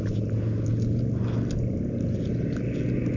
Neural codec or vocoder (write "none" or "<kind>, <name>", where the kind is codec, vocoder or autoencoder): none